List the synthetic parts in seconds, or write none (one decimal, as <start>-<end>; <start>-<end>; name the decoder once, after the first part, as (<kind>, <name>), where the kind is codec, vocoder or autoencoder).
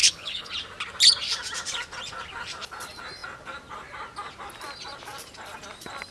0.0-0.5 (codec, HILCodec)